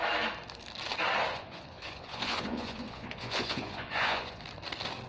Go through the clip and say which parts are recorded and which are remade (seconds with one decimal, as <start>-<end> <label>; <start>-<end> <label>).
0.0-1.3 recorded; 1.3-4.4 remade; 4.4-5.1 recorded